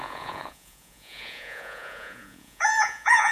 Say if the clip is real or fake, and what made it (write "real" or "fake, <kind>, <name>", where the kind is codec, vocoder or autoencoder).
fake, vocoder, Vocos